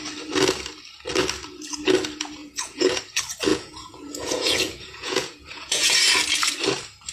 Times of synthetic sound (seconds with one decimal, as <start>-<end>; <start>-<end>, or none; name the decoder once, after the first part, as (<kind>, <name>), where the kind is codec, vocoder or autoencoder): 2.4-3.0 (vocoder, Vocos); 3.5-6.0